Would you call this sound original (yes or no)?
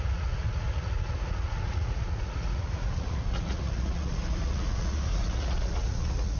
no